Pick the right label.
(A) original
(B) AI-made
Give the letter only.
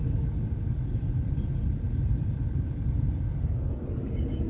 A